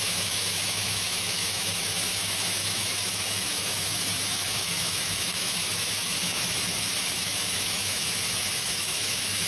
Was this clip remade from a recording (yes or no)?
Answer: yes